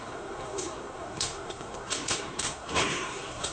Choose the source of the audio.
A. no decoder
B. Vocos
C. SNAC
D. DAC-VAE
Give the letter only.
C